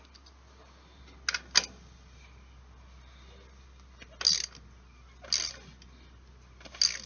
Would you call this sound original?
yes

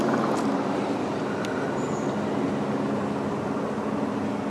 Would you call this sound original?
yes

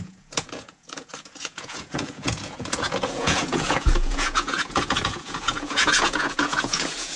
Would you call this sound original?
no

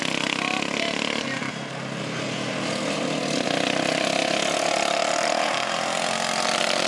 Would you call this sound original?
yes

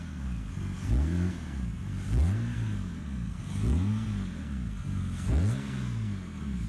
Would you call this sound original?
no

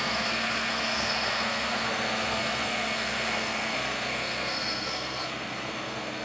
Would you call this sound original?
no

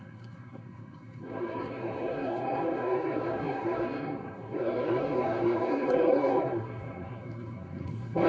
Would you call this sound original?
no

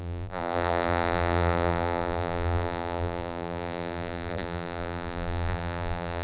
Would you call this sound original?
no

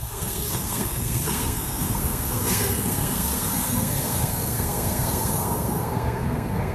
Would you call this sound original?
no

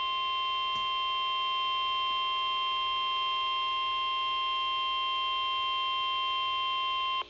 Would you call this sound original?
yes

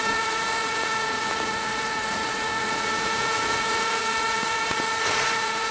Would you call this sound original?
no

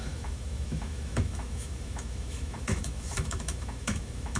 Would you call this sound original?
no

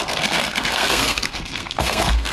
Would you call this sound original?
no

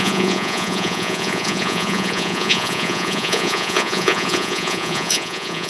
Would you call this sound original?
no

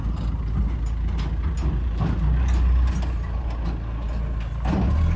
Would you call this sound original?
yes